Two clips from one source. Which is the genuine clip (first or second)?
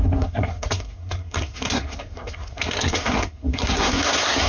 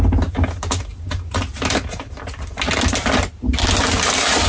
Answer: second